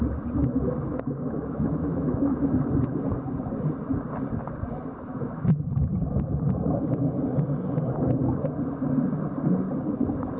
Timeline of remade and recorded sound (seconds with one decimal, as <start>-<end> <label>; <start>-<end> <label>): 0.0-0.9 recorded; 0.9-2.6 remade; 2.6-5.1 recorded; 5.1-5.7 remade; 5.7-10.4 recorded